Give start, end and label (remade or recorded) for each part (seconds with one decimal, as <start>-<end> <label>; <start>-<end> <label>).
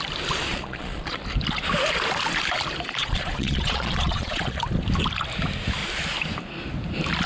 0.0-0.5 recorded; 0.5-1.2 remade; 1.2-3.0 recorded; 3.0-4.6 remade; 4.6-7.3 recorded